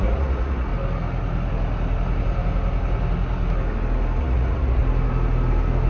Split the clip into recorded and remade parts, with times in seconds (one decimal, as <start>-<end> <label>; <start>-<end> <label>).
0.0-0.7 remade; 0.7-4.2 recorded; 4.2-4.8 remade; 4.8-5.9 recorded